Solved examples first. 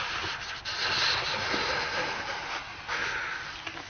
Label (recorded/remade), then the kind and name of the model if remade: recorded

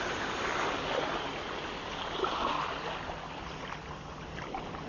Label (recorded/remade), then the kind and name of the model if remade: recorded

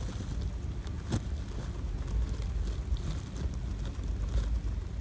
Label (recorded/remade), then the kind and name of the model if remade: recorded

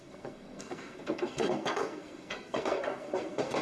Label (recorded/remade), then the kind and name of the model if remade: remade, codec, SNAC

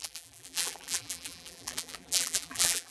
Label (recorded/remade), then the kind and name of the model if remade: remade, vocoder, BigVGAN v2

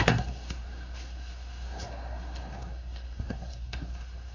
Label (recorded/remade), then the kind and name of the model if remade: remade, codec, SNAC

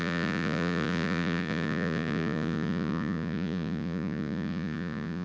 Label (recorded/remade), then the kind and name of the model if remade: remade, vocoder, Vocos